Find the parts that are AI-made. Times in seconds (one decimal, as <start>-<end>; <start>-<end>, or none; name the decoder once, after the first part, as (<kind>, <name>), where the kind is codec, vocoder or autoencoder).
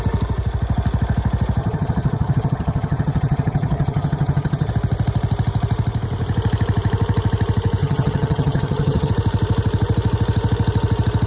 1.6-4.7 (vocoder, HiFi-GAN); 7.8-9.1